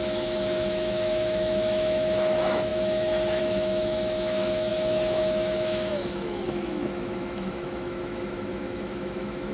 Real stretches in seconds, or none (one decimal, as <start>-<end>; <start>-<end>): none